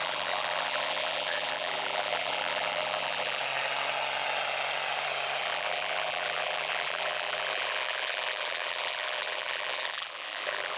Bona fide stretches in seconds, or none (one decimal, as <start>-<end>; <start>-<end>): 3.4-5.4